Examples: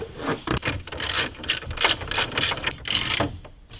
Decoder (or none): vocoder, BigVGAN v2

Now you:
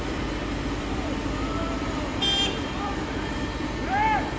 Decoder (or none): vocoder, BigVGAN v2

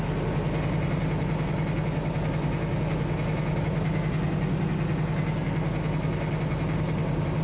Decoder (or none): none